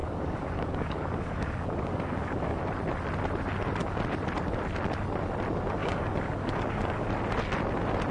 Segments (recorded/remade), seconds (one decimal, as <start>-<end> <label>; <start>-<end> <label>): 0.0-2.6 remade; 2.6-5.8 recorded; 5.8-7.1 remade; 7.1-8.1 recorded